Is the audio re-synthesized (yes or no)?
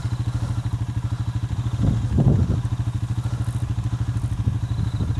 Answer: no